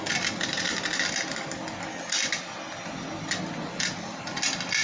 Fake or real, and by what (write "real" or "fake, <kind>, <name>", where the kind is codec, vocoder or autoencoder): real